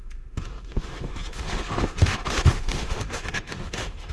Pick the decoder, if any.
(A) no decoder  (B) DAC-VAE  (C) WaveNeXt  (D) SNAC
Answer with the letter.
B